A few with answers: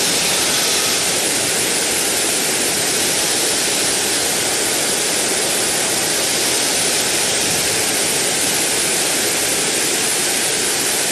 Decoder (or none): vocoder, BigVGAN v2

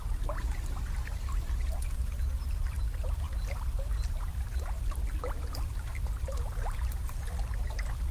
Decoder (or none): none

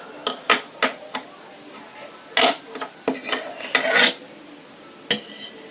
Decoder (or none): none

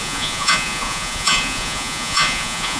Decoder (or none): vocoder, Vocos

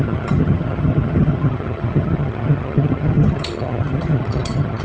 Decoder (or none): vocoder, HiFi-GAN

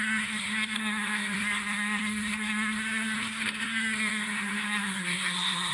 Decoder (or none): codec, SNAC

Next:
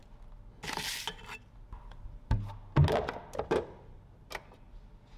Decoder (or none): none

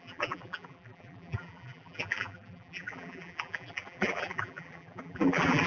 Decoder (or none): vocoder, BigVGAN v2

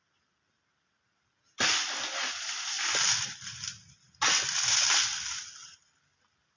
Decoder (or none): none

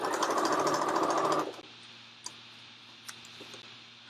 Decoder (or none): none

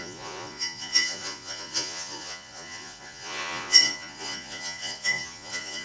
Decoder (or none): vocoder, Vocos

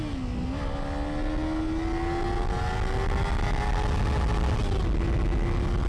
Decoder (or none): none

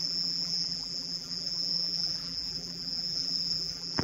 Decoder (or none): vocoder, BigVGAN v2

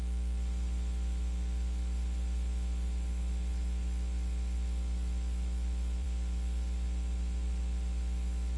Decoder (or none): none